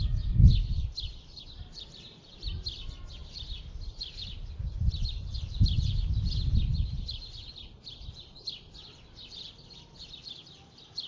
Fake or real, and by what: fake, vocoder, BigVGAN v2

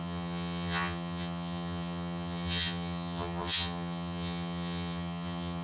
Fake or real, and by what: fake, vocoder, HiFi-GAN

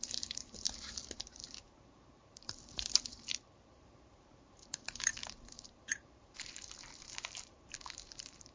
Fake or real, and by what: fake, vocoder, BigVGAN v2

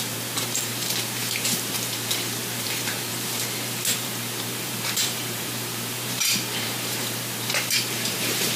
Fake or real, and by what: fake, vocoder, BigVGAN v2